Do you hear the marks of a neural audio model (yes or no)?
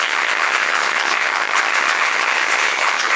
yes